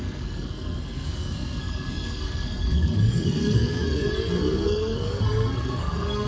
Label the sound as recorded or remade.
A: remade